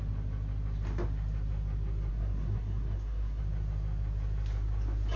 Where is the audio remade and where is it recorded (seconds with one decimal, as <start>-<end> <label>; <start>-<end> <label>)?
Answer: 0.0-2.1 recorded; 2.1-3.4 remade; 3.4-5.2 recorded